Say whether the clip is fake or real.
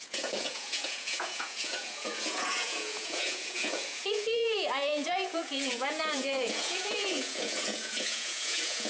fake